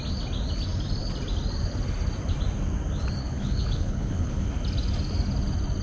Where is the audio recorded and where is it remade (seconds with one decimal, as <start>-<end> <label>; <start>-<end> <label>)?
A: 0.0-3.2 recorded; 3.2-4.5 remade; 4.5-5.8 recorded